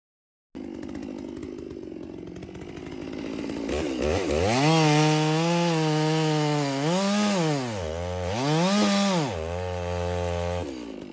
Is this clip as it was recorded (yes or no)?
yes